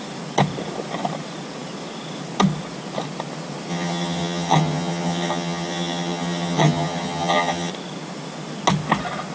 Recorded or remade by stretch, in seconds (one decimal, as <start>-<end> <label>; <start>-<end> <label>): 0.0-3.7 recorded; 3.7-7.7 remade; 7.7-9.3 recorded